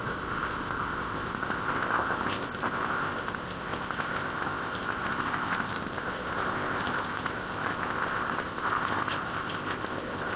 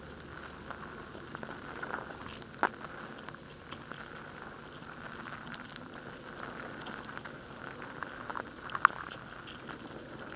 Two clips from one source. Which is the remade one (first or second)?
first